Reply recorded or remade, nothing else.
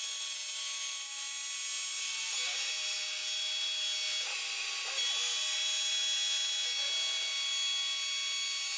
recorded